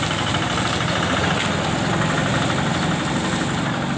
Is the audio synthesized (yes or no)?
no